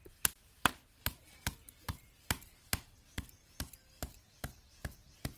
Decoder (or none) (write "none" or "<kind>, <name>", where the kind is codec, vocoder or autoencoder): none